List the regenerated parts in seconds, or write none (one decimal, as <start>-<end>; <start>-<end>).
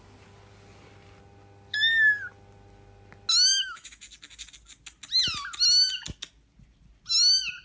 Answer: 3.5-4.0